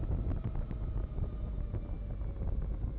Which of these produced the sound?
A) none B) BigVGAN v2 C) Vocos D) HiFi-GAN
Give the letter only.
A